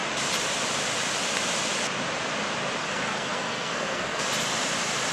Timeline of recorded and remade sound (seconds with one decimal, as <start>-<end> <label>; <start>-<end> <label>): 0.0-2.8 recorded; 2.8-4.2 remade; 4.2-5.1 recorded